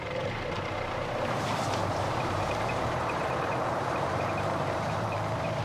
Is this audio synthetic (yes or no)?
yes